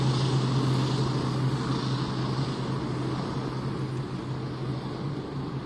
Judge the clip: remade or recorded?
recorded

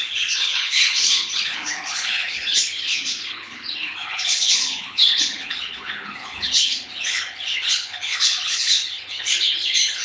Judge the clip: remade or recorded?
remade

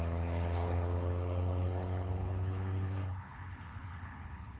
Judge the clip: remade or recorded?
remade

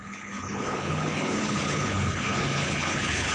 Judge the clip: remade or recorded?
remade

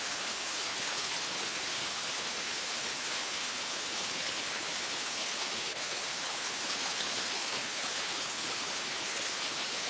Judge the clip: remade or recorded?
remade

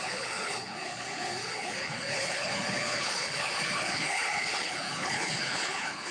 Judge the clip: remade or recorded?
remade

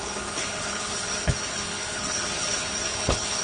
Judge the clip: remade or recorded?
remade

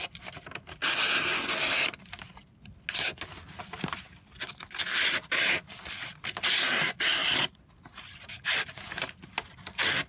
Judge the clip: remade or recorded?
recorded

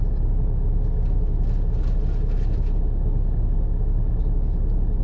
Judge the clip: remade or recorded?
recorded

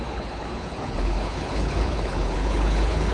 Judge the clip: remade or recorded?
remade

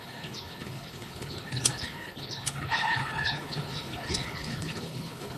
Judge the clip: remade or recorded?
remade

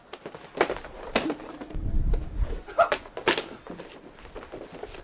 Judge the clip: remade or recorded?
recorded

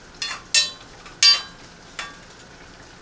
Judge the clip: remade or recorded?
recorded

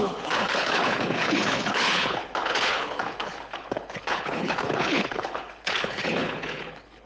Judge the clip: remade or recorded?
remade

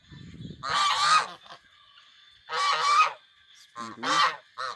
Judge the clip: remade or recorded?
recorded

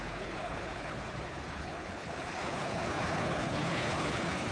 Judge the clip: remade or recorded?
remade